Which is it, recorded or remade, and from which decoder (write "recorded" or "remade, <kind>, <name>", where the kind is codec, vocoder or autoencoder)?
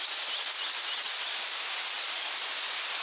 recorded